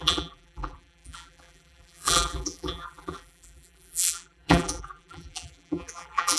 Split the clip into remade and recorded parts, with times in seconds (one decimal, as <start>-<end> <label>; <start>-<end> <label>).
0.0-6.4 remade